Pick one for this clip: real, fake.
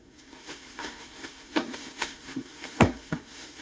fake